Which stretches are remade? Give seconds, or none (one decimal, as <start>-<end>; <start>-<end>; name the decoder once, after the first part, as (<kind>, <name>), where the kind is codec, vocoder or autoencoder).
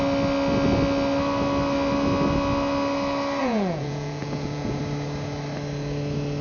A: 3.4-4.8 (vocoder, Vocos)